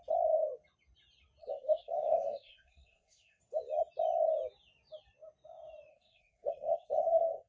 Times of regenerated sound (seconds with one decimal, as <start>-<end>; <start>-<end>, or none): 1.4-3.4; 5.9-7.5

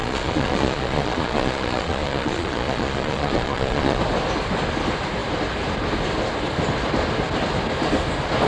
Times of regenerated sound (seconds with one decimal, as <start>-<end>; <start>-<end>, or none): 0.0-4.0

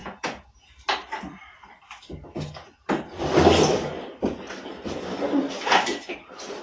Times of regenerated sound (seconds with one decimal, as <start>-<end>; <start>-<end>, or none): 0.0-0.7

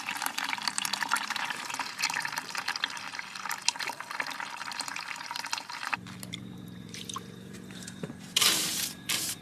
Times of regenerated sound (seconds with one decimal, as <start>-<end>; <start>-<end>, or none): 0.0-2.7; 4.7-9.4

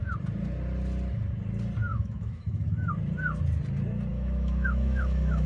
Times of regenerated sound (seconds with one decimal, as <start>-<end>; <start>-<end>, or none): 1.9-2.9; 4.1-5.5